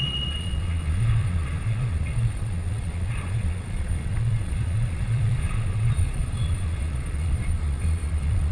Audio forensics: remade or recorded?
remade